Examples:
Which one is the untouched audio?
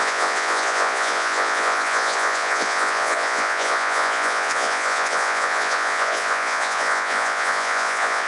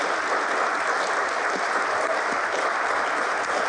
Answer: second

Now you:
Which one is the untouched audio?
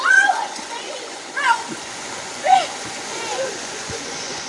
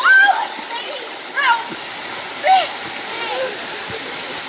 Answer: second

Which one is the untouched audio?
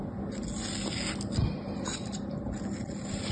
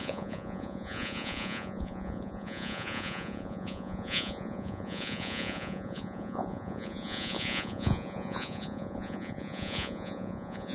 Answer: first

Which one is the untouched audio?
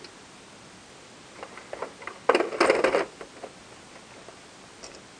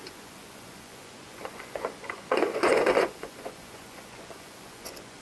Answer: first